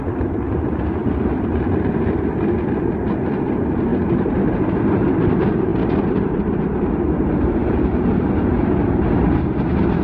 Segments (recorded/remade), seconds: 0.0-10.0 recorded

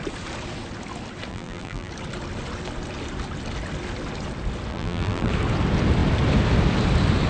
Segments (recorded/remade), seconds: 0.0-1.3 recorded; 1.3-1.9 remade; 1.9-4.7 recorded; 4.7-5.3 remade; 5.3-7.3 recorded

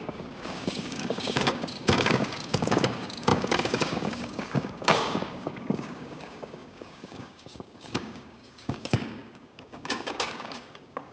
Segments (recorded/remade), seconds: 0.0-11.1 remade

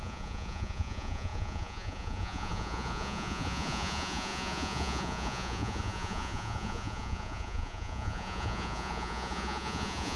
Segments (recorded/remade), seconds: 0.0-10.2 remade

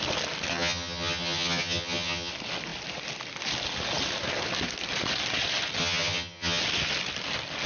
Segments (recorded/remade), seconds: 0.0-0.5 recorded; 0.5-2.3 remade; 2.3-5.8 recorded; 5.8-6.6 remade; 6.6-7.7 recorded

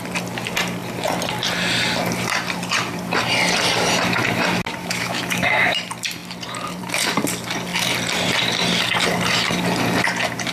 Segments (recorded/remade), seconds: 0.0-4.8 recorded; 4.8-5.8 remade; 5.8-10.5 recorded